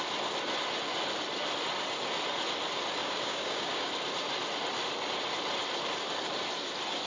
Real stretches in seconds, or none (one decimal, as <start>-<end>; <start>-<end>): 0.0-3.0; 3.9-7.1